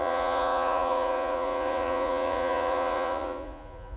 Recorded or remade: remade